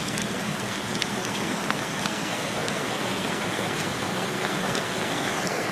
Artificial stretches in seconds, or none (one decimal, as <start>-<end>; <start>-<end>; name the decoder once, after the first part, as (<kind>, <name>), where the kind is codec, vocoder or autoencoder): 0.0-5.7 (codec, SNAC)